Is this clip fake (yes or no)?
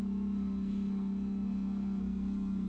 yes